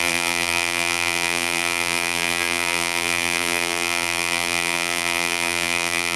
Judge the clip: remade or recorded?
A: remade